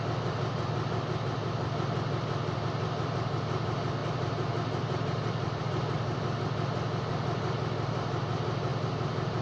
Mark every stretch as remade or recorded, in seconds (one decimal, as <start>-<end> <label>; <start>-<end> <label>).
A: 0.0-4.0 recorded; 4.0-5.6 remade; 5.6-9.4 recorded